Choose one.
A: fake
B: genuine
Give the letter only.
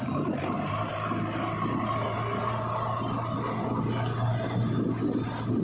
B